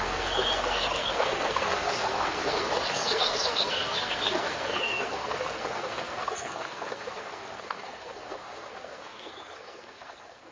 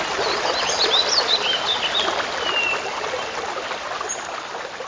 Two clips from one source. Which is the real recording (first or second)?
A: second